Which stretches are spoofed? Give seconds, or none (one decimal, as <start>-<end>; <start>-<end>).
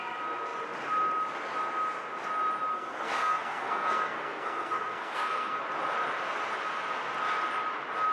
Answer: 2.7-5.6